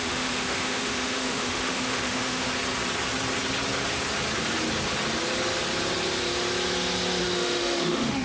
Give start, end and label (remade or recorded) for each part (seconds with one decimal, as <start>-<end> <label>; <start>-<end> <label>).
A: 0.0-2.5 remade; 2.5-7.2 recorded; 7.2-8.2 remade